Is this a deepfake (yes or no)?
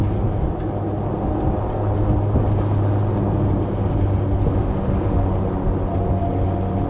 no